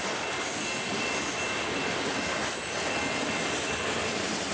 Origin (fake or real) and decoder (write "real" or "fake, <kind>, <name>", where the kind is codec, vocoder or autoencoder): real